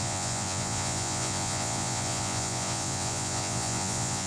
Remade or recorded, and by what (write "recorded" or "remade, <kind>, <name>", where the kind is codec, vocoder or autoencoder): remade, vocoder, Vocos